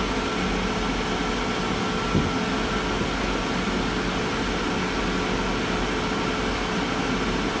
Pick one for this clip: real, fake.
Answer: real